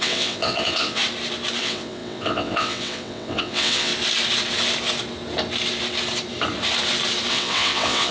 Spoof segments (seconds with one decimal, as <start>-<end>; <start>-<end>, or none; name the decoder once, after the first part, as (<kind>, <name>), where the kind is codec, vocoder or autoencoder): 0.0-1.0 (vocoder, WaveNeXt); 1.6-3.9; 7.3-8.1